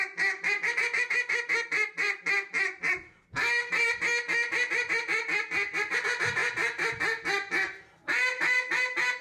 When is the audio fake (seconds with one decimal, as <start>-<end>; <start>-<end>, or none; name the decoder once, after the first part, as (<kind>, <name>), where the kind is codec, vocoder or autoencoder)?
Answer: 6.4-6.9 (vocoder, BigVGAN v2)

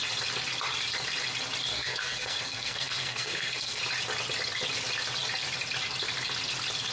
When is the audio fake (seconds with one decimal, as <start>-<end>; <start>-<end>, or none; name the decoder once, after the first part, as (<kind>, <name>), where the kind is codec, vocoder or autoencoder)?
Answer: 1.7-3.8 (codec, SNAC)